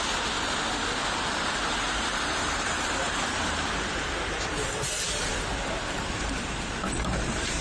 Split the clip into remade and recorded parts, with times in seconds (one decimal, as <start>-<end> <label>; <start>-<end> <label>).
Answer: 0.0-1.7 recorded; 1.7-5.3 remade; 5.3-7.6 recorded